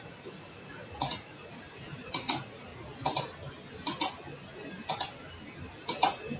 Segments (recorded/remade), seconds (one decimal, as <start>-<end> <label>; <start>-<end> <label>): 0.0-2.7 remade; 2.7-6.4 recorded